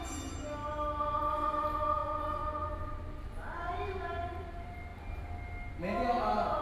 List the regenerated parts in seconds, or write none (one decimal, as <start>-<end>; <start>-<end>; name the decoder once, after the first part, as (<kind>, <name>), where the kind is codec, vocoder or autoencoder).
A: none

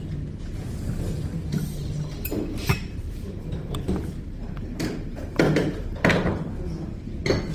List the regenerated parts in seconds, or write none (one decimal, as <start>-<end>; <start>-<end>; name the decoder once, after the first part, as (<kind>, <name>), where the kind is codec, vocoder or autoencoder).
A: 1.8-6.3 (vocoder, BigVGAN v2)

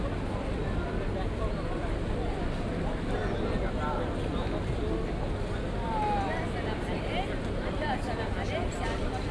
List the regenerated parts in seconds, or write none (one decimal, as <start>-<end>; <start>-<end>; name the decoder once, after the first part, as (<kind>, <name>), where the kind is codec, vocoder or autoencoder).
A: none

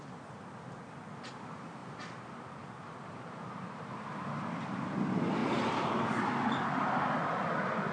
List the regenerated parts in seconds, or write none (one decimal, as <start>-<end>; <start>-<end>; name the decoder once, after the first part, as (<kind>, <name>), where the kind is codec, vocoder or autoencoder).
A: 1.8-3.9 (vocoder, BigVGAN v2); 5.4-6.5